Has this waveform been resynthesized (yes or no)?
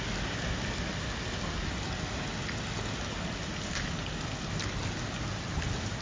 no